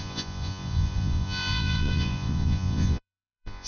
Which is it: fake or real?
fake